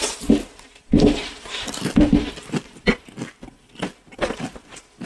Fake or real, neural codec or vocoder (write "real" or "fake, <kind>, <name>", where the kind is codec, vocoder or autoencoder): real